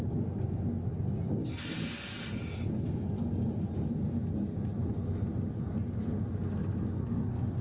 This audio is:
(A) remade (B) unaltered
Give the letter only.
B